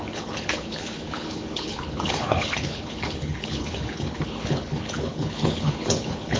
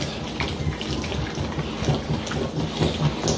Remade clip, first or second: first